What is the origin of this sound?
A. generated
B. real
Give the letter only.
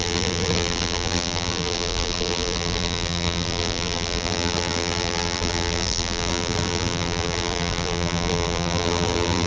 A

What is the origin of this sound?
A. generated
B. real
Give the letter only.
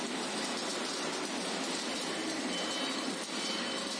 B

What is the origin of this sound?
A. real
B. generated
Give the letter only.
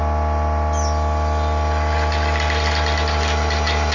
A